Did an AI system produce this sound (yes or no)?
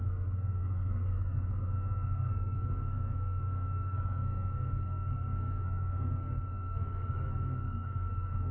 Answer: yes